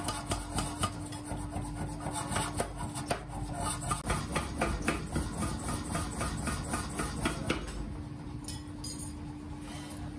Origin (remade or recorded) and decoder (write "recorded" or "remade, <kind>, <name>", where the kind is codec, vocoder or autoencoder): recorded